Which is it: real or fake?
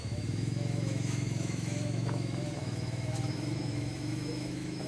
fake